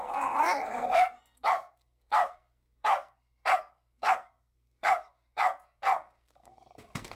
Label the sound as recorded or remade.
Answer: remade